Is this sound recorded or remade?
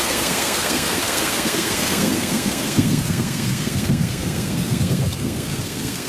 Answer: remade